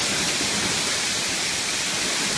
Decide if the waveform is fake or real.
real